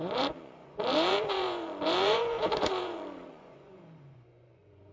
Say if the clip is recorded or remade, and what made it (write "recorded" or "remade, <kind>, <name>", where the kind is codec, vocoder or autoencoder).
remade, vocoder, Vocos